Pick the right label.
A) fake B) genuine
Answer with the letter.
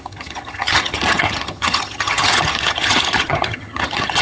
A